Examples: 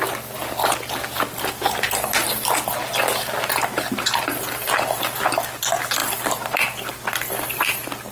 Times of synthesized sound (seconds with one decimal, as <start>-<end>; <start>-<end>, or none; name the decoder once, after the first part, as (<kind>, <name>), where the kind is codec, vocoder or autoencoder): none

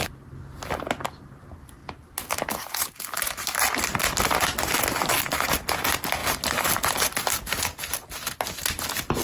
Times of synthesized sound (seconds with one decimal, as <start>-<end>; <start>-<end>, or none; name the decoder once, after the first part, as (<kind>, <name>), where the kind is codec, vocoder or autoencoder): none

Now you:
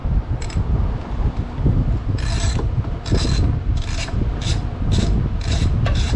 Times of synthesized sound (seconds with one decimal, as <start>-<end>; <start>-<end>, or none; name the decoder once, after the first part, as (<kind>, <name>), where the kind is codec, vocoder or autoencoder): 0.0-2.0 (vocoder, BigVGAN v2); 5.3-6.2

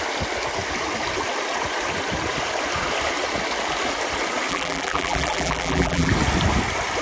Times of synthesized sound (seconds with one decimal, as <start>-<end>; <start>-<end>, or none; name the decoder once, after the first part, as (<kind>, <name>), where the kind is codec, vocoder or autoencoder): 4.5-6.1 (vocoder, BigVGAN v2)

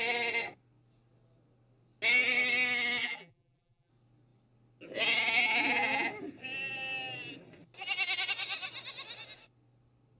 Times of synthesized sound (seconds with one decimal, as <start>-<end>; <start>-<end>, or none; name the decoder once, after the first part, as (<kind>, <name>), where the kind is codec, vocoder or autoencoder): 3.0-3.9 (vocoder, BigVGAN v2)

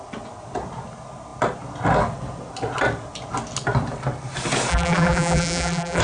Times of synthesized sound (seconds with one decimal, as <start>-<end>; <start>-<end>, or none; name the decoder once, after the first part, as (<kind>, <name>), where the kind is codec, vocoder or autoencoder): 4.7-6.0 (vocoder, BigVGAN v2)